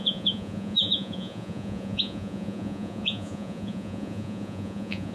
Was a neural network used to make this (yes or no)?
yes